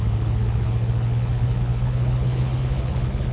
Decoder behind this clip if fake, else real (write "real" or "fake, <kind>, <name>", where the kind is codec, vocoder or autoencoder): fake, codec, HILCodec